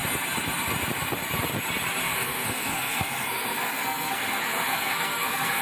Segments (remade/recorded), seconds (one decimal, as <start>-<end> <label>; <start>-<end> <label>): 0.0-2.0 recorded; 2.0-5.6 remade

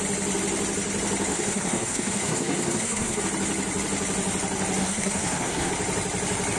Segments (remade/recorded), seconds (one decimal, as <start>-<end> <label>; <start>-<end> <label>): 0.0-1.3 recorded; 1.3-3.2 remade; 3.2-4.8 recorded; 4.8-5.7 remade; 5.7-6.6 recorded

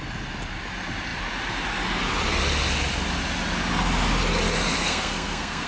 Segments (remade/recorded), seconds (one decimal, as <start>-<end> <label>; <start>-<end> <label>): 0.0-4.8 recorded; 4.8-5.7 remade

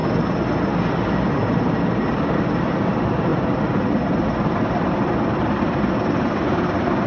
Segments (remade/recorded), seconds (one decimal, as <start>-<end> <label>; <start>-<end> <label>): 0.0-7.1 recorded